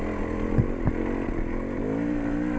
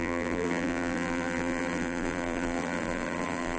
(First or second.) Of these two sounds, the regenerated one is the second